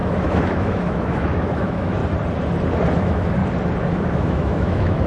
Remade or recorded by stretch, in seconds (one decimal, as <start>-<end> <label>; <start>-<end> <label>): 0.0-2.0 remade; 2.0-3.0 recorded; 3.0-3.4 remade; 3.4-3.9 recorded; 3.9-5.1 remade